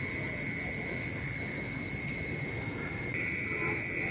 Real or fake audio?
real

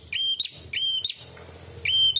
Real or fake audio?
real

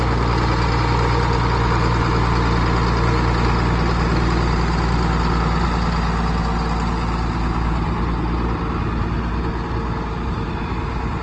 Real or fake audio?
real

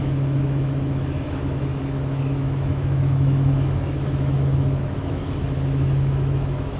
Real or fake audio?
fake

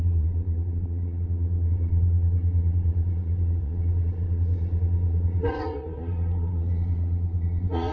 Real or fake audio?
fake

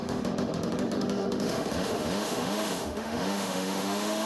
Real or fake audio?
fake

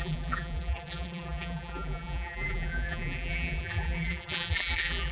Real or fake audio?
fake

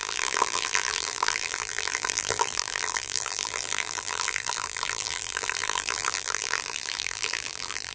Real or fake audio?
fake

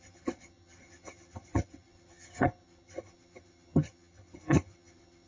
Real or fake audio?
fake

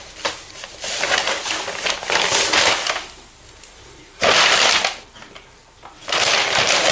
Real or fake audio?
real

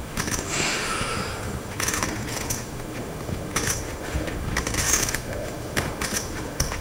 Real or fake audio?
fake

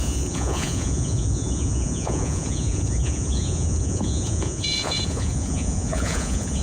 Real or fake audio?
fake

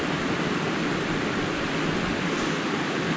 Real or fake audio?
real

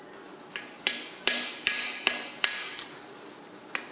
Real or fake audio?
real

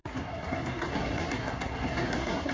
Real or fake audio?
fake